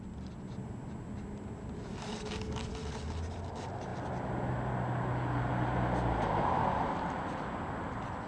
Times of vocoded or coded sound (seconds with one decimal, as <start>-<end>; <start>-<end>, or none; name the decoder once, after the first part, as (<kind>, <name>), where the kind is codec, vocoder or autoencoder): 2.1-2.7 (codec, DAC)